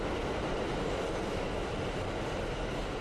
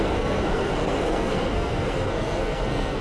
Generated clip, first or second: second